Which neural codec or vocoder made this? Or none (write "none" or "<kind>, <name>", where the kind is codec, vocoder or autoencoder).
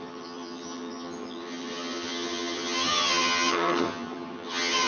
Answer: vocoder, HiFi-GAN